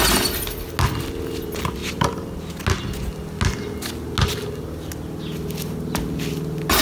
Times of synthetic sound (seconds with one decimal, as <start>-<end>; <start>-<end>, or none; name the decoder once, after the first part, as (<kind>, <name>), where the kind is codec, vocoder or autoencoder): none